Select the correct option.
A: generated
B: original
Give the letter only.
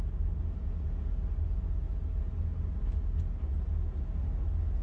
B